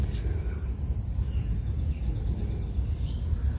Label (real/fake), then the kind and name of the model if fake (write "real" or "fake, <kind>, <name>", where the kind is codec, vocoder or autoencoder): real